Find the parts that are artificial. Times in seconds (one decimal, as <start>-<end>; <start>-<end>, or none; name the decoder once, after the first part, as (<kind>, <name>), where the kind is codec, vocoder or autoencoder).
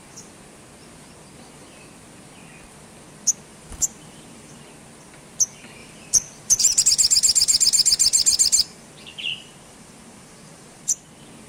3.5-4.6 (vocoder, BigVGAN v2); 5.8-6.8; 9.1-11.0